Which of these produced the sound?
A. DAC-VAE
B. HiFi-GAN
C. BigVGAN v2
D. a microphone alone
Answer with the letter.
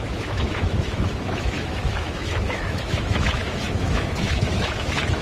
A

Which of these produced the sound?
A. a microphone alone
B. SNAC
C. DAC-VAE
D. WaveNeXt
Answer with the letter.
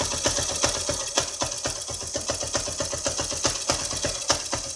A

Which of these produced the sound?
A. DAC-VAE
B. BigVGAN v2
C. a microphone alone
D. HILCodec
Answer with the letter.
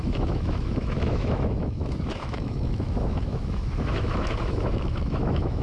A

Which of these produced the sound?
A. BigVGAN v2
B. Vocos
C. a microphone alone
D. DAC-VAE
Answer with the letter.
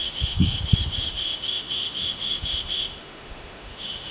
D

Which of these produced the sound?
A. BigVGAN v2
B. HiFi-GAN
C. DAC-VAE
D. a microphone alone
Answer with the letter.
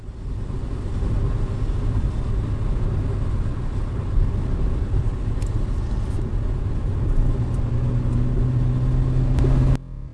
D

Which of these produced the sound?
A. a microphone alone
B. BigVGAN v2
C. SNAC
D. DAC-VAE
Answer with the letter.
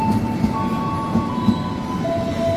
A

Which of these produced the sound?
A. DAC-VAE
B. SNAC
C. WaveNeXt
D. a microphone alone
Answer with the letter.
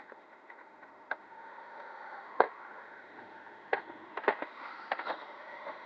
A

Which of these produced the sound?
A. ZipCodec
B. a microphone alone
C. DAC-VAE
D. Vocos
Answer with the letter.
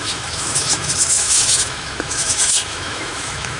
C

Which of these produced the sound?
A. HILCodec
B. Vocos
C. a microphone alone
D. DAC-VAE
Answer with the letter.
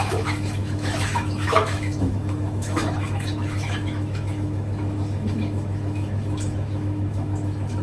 D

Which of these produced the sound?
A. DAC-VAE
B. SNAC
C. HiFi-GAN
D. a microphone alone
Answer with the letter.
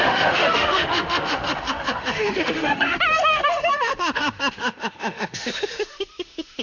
A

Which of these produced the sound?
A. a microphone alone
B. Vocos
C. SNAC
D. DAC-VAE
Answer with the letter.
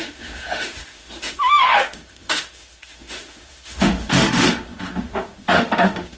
D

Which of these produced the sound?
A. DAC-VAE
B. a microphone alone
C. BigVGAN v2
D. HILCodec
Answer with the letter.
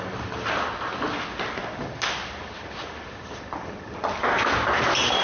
B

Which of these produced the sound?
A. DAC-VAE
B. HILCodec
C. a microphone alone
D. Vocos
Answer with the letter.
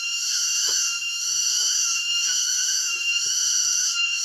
A